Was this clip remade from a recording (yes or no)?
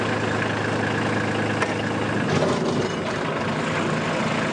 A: no